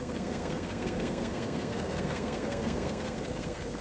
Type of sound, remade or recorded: remade